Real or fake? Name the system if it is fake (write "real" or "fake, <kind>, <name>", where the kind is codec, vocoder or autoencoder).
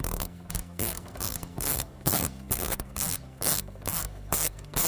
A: fake, codec, SNAC